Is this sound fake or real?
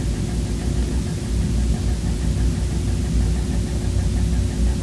real